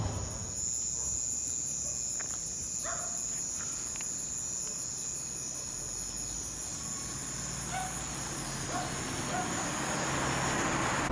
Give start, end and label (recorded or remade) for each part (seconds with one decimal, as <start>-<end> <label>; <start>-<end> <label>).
0.0-11.1 recorded